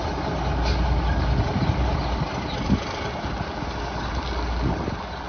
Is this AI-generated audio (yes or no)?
no